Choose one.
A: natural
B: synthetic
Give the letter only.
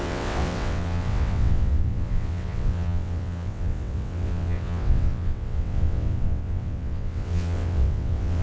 B